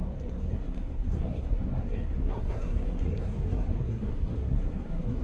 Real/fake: fake